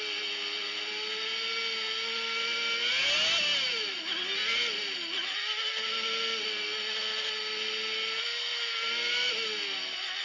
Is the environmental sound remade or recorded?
recorded